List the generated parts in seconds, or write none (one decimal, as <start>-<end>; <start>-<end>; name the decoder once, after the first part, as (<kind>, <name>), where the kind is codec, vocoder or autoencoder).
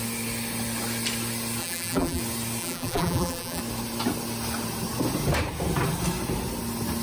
1.6-2.2 (vocoder, BigVGAN v2); 2.6-3.6